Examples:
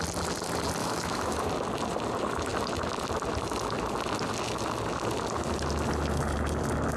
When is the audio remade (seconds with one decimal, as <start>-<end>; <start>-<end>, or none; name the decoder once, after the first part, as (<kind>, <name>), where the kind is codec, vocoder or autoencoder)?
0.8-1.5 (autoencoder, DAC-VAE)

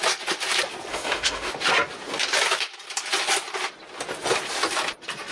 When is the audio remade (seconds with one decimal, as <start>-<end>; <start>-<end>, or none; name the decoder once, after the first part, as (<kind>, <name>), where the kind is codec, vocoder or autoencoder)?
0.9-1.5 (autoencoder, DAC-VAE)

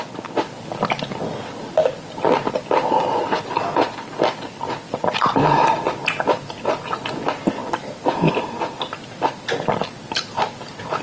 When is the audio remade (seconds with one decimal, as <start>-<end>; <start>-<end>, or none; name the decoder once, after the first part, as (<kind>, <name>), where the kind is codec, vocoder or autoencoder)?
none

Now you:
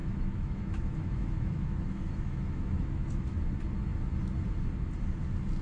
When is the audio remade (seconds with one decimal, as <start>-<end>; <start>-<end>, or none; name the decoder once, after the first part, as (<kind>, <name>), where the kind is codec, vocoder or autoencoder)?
0.0-3.4 (autoencoder, DAC-VAE)

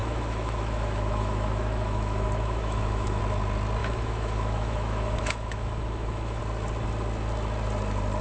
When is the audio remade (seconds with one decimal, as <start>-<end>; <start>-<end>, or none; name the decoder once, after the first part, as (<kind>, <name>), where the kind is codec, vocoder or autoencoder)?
0.0-3.2 (autoencoder, DAC-VAE); 3.8-6.4

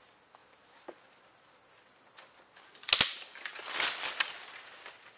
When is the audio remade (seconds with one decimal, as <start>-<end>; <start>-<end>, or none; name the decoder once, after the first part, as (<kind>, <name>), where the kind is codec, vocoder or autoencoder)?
none

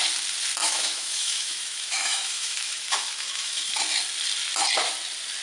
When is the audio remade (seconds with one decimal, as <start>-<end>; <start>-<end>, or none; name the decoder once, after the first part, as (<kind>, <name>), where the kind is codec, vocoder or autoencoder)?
0.6-3.8 (autoencoder, DAC-VAE)